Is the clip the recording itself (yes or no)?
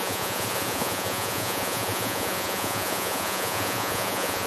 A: no